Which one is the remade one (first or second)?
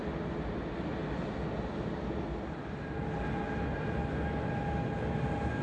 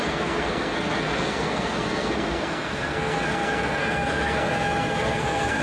second